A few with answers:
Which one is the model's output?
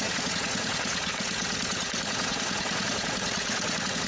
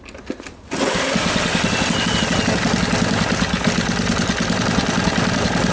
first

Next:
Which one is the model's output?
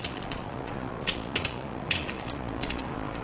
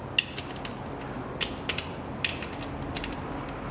first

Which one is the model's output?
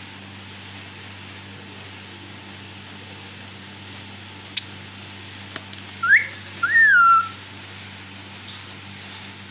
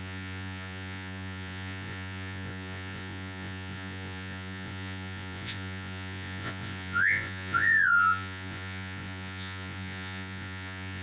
second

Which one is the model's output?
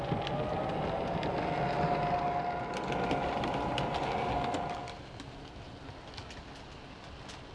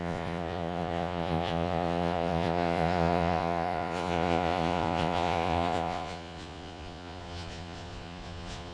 second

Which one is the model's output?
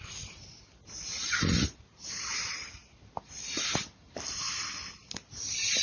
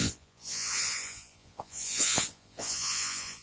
second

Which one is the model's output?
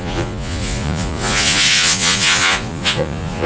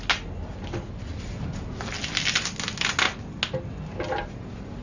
first